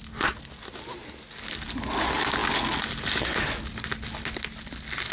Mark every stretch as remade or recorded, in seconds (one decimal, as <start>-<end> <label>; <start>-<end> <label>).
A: 0.0-5.1 recorded